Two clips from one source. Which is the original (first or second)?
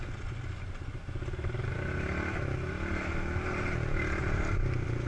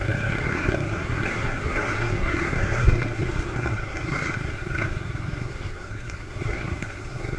first